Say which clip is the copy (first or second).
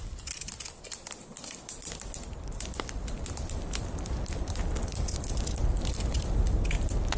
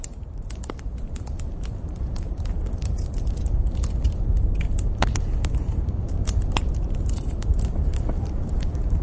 second